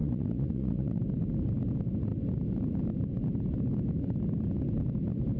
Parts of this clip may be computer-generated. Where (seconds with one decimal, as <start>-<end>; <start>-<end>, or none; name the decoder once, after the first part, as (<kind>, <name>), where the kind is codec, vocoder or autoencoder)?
0.0-1.0 (vocoder, Vocos)